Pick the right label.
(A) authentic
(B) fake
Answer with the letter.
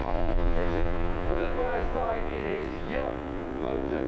B